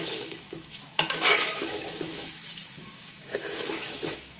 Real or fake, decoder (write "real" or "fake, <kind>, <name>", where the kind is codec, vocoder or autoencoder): fake, autoencoder, DAC-VAE